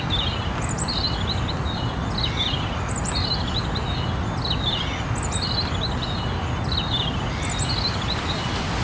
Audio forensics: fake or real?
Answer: real